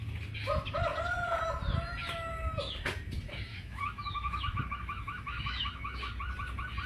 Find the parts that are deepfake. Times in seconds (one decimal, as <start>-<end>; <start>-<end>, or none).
3.5-6.1